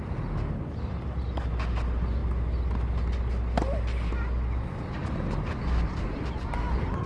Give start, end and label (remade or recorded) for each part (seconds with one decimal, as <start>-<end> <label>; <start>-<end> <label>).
0.0-7.1 recorded